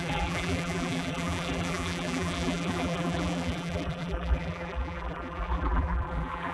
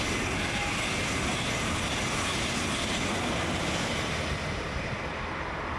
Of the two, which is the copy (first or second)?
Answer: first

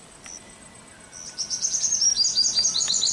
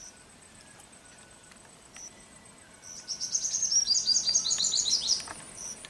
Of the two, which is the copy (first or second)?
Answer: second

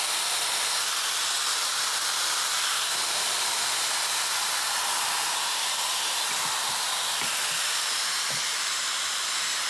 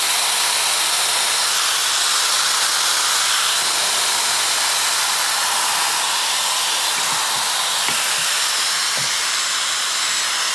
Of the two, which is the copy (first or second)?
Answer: first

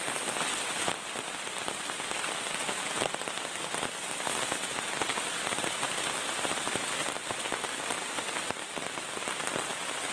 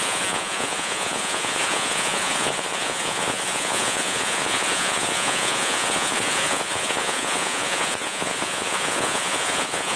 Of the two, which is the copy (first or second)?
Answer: second